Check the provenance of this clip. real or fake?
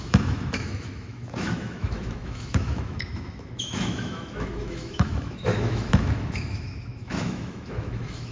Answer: fake